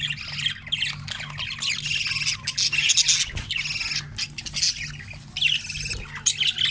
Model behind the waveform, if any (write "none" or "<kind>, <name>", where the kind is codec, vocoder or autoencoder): none